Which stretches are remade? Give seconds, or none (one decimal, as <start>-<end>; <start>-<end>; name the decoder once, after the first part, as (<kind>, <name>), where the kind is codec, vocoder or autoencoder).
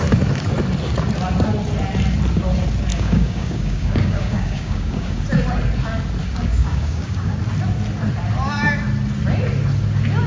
2.9-5.2 (codec, DAC); 6.2-7.4